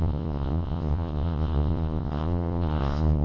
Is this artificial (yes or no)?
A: yes